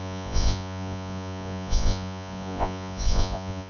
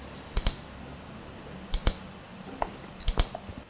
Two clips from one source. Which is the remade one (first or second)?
first